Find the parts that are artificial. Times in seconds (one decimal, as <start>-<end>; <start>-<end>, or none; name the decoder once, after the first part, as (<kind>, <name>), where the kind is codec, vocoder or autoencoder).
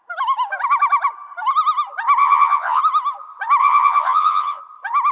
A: 2.2-2.8 (vocoder, Vocos); 3.6-4.6